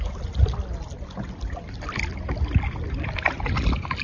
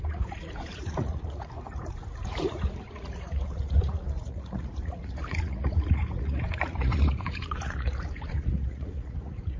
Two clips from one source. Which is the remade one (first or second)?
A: second